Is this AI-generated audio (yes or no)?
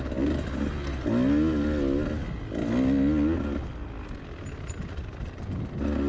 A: no